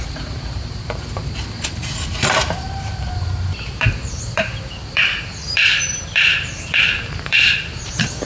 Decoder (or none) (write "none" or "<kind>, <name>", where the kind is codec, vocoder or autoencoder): vocoder, BigVGAN v2